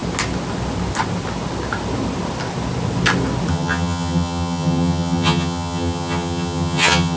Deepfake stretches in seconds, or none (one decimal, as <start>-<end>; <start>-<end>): 3.5-7.2